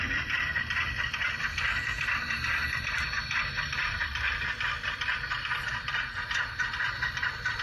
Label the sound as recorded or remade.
remade